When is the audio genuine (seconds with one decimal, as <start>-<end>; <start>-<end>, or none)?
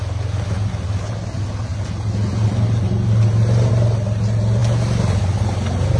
0.0-6.0